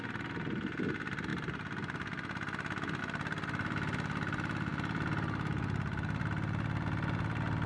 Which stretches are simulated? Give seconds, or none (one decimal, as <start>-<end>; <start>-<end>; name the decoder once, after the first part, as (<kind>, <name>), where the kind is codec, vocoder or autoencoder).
none